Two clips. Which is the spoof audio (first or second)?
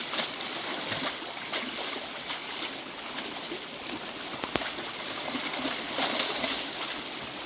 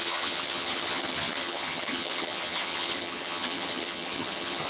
second